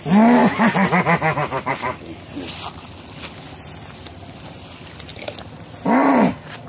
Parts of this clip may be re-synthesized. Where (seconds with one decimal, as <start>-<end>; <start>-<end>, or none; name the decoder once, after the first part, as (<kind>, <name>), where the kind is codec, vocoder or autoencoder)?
5.1-6.7 (vocoder, BigVGAN v2)